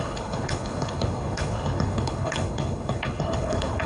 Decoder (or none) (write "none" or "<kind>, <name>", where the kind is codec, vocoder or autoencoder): codec, HILCodec